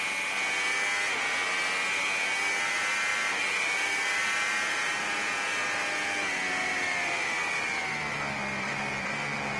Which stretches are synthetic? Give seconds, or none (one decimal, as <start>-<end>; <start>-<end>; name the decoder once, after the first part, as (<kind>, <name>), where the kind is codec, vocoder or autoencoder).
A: 3.1-5.1 (vocoder, BigVGAN v2); 6.6-8.2